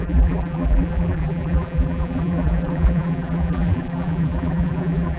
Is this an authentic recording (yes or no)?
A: no